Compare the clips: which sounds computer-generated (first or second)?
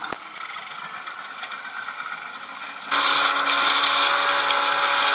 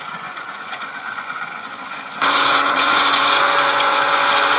second